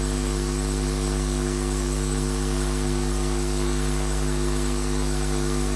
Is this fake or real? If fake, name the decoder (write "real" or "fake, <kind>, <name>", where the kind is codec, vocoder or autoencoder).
fake, codec, SNAC